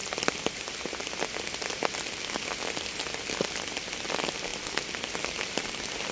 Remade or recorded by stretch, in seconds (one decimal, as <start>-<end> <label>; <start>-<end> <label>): 0.0-6.1 recorded